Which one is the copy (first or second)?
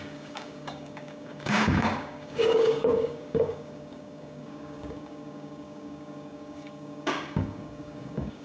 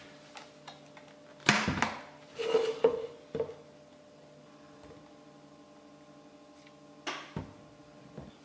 first